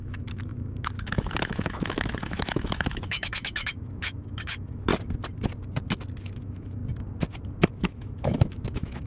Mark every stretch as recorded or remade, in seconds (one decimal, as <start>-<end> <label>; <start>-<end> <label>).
0.0-4.9 remade; 4.9-6.2 recorded; 6.2-6.8 remade; 6.8-7.7 recorded; 7.7-9.1 remade

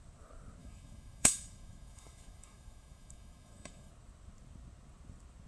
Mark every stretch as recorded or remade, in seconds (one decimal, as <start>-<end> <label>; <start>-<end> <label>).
0.0-0.6 recorded; 0.6-3.9 remade; 3.9-5.5 recorded

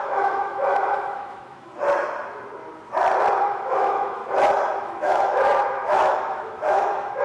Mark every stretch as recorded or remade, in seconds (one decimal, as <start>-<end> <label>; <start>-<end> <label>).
0.0-1.7 remade; 1.7-3.4 recorded; 3.4-4.2 remade; 4.2-4.8 recorded; 4.8-7.2 remade